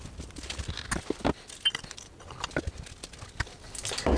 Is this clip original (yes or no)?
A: yes